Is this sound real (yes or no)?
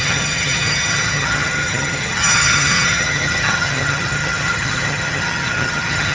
no